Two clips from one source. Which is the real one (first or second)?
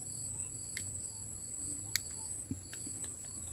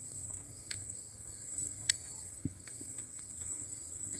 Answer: first